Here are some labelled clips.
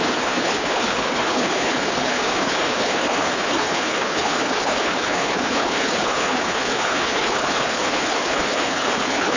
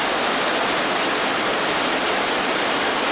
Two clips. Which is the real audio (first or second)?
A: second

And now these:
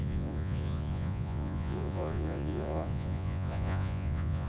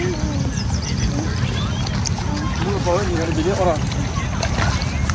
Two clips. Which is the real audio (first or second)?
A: second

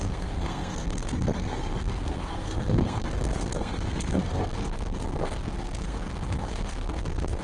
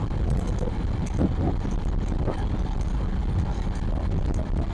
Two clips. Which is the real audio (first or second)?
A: second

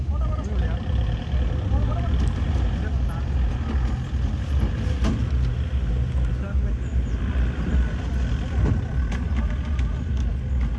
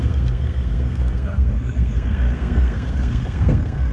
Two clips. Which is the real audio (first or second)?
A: first